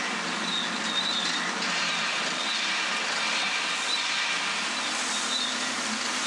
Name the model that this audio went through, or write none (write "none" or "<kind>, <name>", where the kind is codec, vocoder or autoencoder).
none